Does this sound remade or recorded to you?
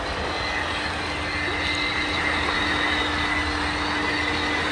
recorded